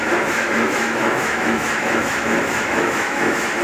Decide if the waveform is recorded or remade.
remade